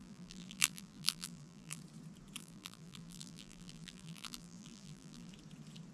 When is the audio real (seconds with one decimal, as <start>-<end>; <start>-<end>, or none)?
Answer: 1.8-2.4; 5.3-5.9